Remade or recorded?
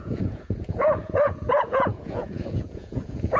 remade